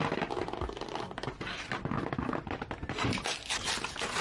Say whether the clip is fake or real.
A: real